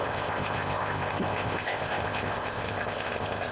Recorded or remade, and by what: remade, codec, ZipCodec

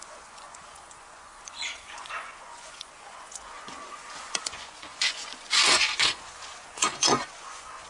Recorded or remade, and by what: remade, vocoder, Vocos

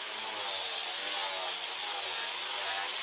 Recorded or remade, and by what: recorded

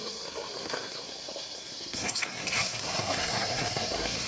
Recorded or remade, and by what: remade, codec, SNAC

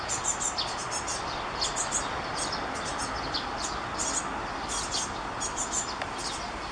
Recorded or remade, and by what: recorded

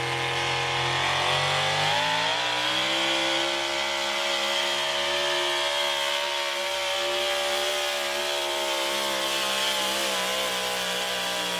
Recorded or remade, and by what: recorded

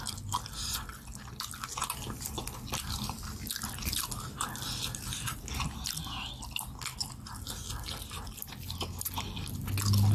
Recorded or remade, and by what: recorded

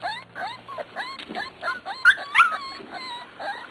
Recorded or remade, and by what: recorded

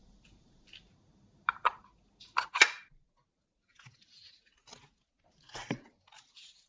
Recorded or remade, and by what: recorded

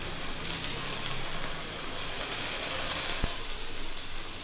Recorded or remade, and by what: recorded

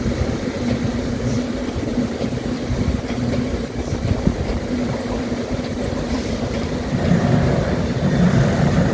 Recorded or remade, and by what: remade, vocoder, BigVGAN v2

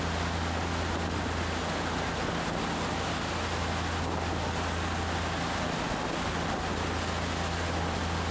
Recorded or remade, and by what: recorded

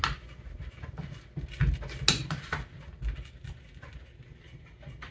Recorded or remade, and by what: recorded